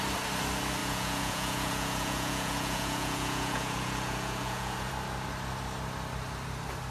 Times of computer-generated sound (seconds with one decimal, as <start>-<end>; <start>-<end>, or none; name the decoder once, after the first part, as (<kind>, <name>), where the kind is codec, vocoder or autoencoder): 0.8-4.9 (vocoder, Vocos)